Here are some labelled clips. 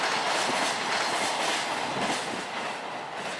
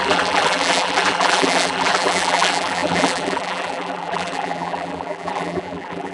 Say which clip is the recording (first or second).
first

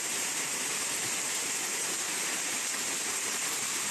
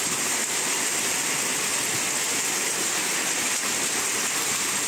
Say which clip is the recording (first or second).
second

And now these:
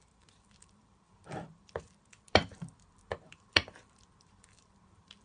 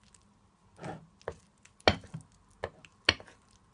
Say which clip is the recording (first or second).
second